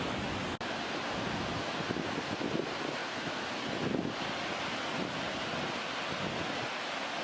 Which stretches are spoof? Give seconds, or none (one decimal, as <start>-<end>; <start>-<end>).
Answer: none